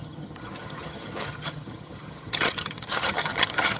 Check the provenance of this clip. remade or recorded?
remade